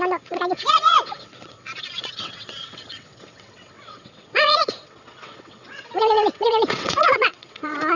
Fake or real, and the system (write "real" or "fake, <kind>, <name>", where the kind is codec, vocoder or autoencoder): fake, vocoder, WaveNeXt